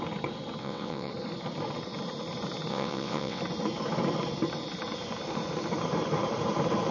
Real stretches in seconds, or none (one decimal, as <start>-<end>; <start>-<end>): 0.0-0.6; 1.1-2.7; 3.4-6.9